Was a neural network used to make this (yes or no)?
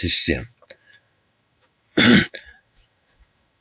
yes